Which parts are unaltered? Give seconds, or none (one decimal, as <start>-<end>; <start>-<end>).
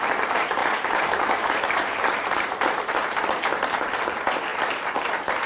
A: none